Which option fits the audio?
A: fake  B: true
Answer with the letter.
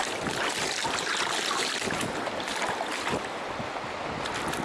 B